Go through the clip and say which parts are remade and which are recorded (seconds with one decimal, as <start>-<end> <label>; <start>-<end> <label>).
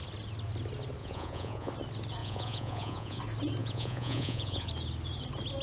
0.0-1.0 recorded; 1.0-1.7 remade; 1.7-2.2 recorded; 2.2-3.2 remade; 3.2-3.6 recorded; 3.6-4.7 remade; 4.7-5.6 recorded